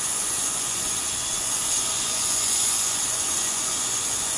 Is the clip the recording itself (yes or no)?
no